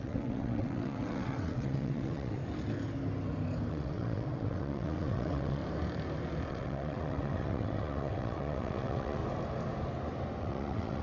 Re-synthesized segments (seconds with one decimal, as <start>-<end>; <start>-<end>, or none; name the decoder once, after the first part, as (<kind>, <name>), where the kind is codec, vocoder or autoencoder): 0.0-2.4 (vocoder, WaveNeXt); 3.7-5.6; 6.5-9.2; 10.4-11.0